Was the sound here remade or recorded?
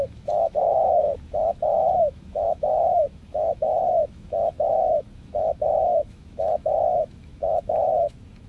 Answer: remade